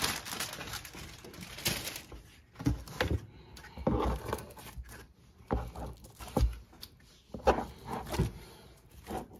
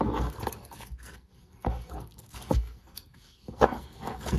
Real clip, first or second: first